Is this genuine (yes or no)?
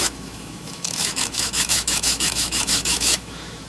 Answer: no